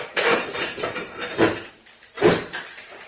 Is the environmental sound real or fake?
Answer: fake